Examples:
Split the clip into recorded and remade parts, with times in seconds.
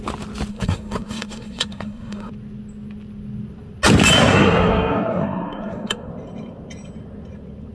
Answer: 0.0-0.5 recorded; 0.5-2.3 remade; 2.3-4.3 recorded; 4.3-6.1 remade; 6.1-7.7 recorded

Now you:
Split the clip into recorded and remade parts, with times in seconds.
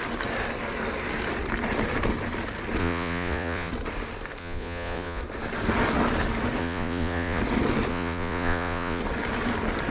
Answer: 0.0-2.8 recorded; 2.8-3.7 remade; 3.7-4.4 recorded; 4.4-5.2 remade; 5.2-6.6 recorded; 6.6-7.4 remade; 7.4-7.9 recorded; 7.9-9.0 remade; 9.0-9.9 recorded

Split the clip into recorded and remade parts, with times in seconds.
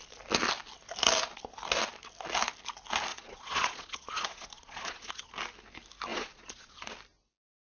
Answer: 0.0-3.1 recorded; 3.1-5.3 remade; 5.3-6.1 recorded; 6.1-6.9 remade; 6.9-7.6 recorded